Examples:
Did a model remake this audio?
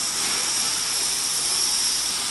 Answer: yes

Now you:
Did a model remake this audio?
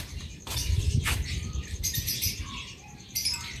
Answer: yes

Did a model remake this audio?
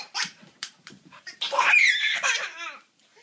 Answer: yes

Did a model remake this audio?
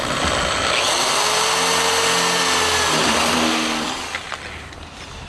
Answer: no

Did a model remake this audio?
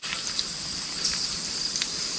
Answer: yes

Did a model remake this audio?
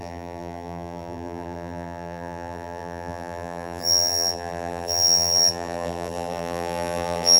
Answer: yes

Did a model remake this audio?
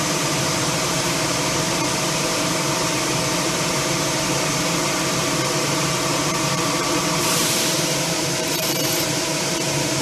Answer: yes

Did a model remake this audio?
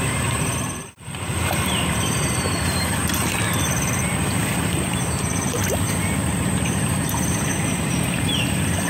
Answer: yes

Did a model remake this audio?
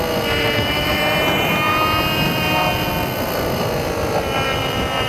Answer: no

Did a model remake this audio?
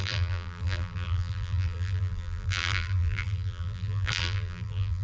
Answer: yes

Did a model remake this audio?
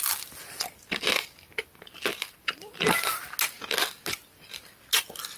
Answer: no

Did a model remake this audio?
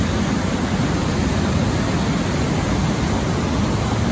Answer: no